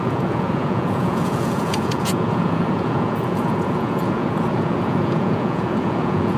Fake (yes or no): yes